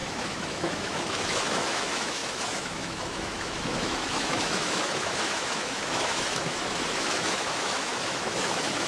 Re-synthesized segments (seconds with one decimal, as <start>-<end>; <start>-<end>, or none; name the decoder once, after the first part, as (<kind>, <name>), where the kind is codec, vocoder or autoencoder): 0.0-8.9 (autoencoder, DAC-VAE)